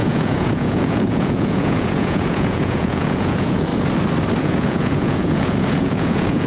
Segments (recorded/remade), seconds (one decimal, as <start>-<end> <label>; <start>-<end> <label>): 0.0-3.7 remade; 3.7-4.4 recorded; 4.4-6.5 remade